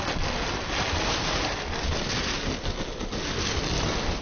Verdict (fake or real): real